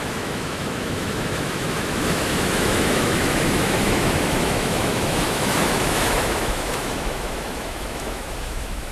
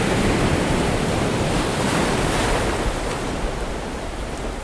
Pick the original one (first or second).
second